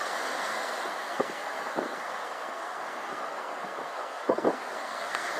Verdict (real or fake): fake